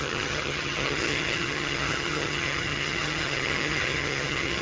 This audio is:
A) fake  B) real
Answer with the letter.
A